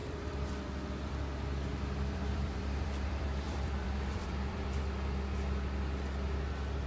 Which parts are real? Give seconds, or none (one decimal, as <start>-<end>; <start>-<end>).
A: 1.1-1.7; 4.8-6.9